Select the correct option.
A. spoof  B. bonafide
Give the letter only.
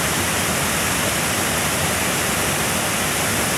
B